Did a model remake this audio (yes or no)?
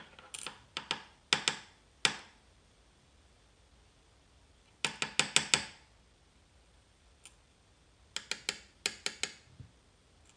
no